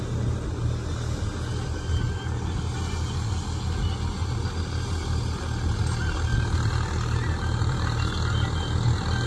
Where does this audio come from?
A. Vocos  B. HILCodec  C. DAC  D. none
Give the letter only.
D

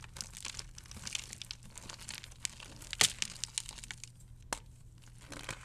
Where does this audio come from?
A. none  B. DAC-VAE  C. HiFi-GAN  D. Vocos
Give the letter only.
A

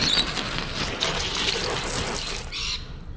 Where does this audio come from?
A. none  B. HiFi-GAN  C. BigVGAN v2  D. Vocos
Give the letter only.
A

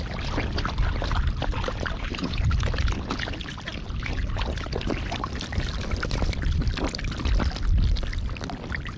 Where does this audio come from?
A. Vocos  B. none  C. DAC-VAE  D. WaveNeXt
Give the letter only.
B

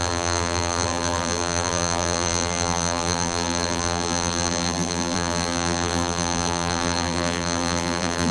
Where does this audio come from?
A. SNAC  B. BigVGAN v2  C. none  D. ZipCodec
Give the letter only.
B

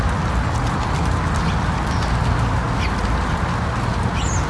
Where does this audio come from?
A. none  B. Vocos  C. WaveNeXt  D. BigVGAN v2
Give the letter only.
A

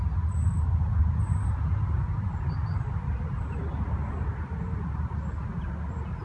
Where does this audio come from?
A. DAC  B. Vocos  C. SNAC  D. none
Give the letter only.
D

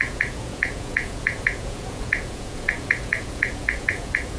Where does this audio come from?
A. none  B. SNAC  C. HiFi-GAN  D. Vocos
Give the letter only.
D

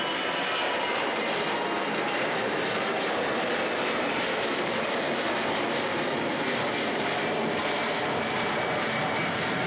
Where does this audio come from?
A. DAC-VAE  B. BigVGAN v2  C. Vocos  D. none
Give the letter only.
B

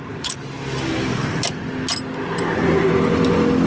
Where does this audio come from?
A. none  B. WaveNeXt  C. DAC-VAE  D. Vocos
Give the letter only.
A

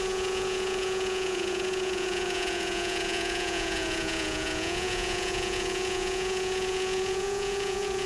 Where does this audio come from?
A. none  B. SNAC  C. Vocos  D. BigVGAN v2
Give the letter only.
C